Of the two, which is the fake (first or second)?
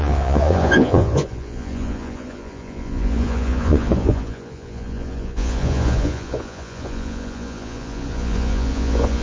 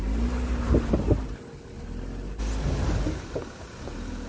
first